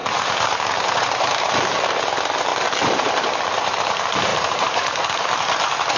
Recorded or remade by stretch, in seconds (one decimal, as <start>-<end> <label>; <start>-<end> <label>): 0.0-2.0 remade; 2.0-2.5 recorded; 2.5-3.8 remade; 3.8-4.3 recorded; 4.3-5.0 remade; 5.0-6.0 recorded